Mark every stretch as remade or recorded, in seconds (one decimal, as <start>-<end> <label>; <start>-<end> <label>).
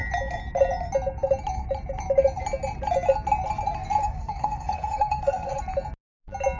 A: 0.0-4.0 recorded; 4.0-5.6 remade; 5.6-6.6 recorded